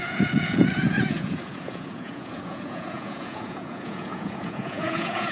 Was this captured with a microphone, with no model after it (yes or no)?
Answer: no